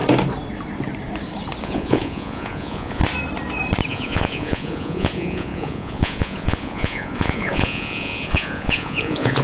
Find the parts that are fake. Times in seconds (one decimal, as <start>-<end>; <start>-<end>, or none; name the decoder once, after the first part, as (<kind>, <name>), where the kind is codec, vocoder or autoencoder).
1.6-3.0 (vocoder, Vocos); 3.9-9.4